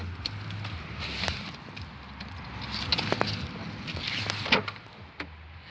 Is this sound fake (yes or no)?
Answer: no